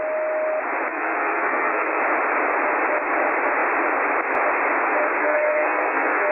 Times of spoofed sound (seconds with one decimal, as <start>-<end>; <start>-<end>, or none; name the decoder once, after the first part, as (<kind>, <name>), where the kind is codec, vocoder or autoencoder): 0.9-2.0 (codec, SNAC); 5.2-6.3